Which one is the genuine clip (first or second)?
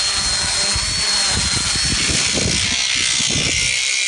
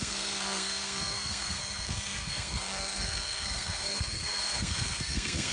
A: first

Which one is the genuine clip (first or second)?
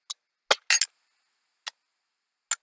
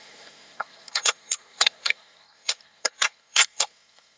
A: first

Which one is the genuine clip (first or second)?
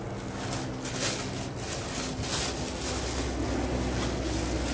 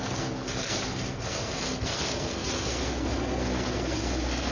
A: first